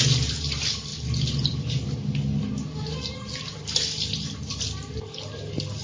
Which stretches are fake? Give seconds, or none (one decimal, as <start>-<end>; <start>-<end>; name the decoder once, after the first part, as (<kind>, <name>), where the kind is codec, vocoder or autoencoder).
none